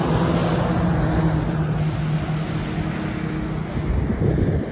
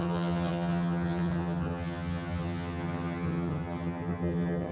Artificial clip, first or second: second